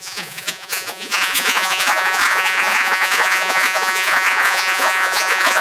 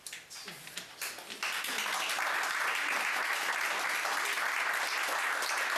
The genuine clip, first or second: second